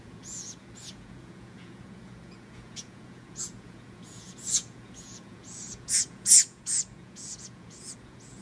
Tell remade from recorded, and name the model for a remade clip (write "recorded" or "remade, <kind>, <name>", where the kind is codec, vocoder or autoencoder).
remade, vocoder, Vocos